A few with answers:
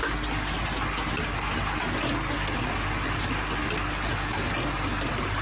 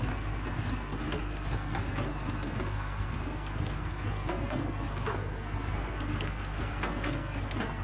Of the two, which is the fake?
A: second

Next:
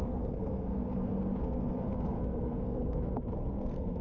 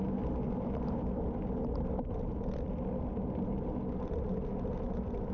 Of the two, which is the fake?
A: first